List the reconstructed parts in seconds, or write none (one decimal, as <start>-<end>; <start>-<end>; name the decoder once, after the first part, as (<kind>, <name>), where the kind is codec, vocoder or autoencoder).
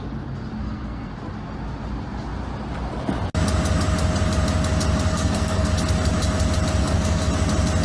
0.6-1.1 (codec, SNAC); 5.1-5.7; 6.8-7.3